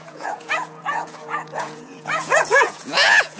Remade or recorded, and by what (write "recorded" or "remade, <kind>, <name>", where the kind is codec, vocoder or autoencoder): remade, vocoder, Vocos